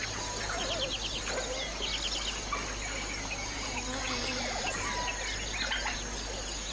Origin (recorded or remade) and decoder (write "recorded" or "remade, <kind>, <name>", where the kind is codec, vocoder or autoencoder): recorded